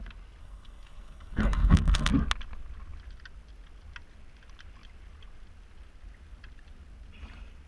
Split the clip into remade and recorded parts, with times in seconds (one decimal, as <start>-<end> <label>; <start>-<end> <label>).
0.0-0.4 recorded; 0.4-2.1 remade; 2.1-7.7 recorded